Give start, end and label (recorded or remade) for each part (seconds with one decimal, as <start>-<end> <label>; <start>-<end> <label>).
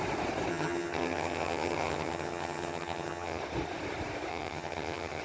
0.0-0.5 recorded; 0.5-3.4 remade; 3.4-4.3 recorded; 4.3-5.2 remade